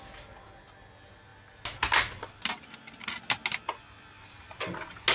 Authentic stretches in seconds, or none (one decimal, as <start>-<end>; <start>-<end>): 0.0-5.1